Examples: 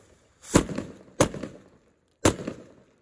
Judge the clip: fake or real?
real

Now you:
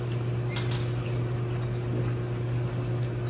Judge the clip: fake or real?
real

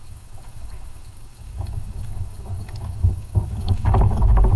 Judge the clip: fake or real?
fake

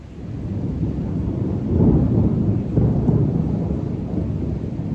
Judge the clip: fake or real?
real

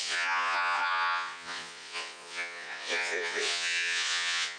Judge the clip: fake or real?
fake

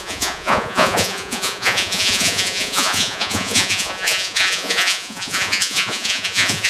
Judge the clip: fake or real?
fake